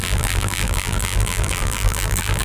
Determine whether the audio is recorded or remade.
remade